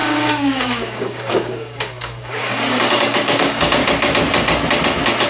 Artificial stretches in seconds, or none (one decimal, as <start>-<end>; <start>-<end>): 0.0-3.8